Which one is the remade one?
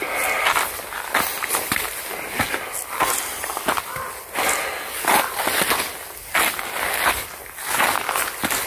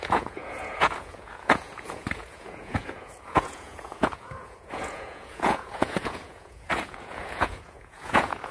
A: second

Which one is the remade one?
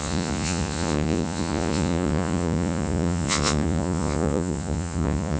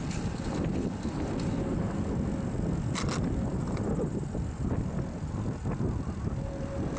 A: first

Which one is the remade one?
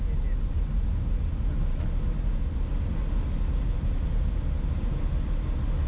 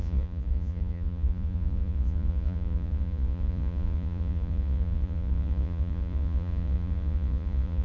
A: second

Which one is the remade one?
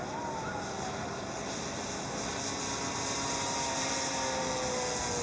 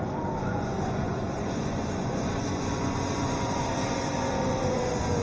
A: second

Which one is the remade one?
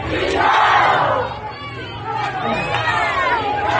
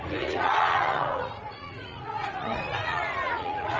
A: second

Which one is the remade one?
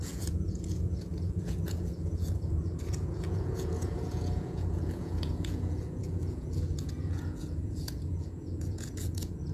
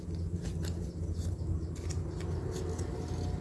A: first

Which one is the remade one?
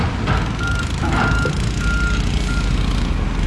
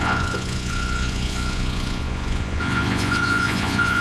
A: second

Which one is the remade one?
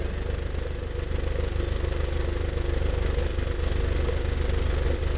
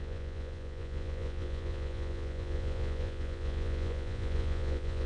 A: second